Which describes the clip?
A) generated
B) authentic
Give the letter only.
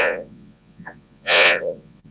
A